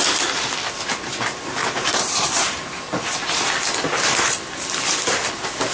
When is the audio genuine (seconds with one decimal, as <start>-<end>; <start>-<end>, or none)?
0.0-1.6; 3.0-5.7